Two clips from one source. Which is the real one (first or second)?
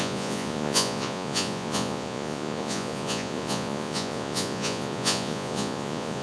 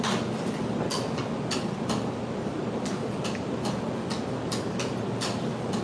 second